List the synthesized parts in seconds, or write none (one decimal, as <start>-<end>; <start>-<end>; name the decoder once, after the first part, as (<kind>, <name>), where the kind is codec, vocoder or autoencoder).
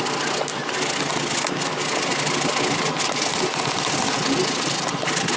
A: none